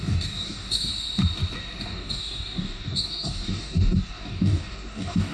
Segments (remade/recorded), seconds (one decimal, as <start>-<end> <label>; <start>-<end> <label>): 0.0-0.9 remade; 0.9-1.8 recorded; 1.8-5.3 remade